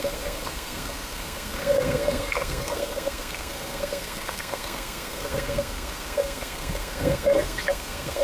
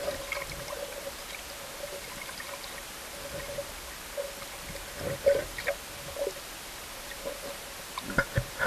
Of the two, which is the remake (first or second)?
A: first